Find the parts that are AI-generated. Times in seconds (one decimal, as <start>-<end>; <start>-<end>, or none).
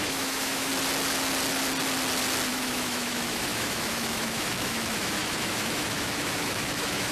0.0-0.7; 2.5-7.1